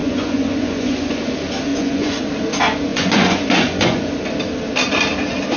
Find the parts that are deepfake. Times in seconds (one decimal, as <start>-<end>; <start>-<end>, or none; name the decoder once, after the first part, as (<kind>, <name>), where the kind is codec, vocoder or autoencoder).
0.0-1.2 (vocoder, Vocos); 1.7-2.2; 2.9-4.1